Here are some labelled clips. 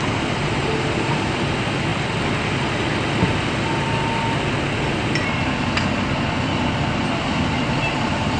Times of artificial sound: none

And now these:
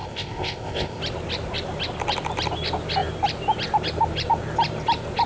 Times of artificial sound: 0.0-1.0 (codec, ZipCodec)

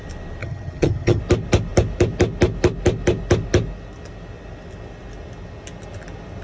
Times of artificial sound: 0.4-1.2 (vocoder, HiFi-GAN)